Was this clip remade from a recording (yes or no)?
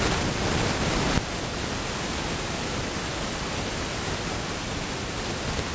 no